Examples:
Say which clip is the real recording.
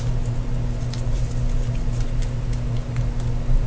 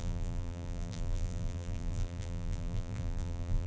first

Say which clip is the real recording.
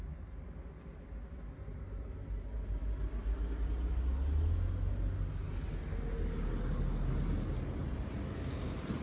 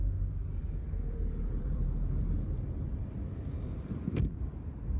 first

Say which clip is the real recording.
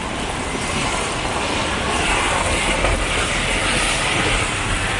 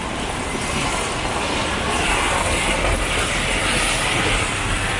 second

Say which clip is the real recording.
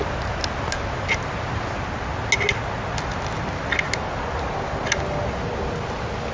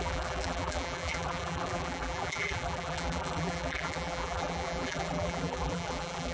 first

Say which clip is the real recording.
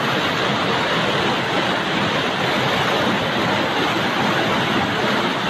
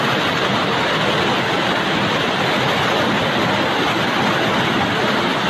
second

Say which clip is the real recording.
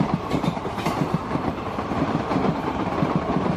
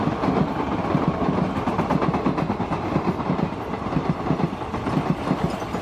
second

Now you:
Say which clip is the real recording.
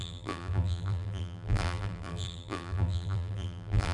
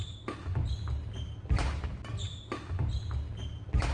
second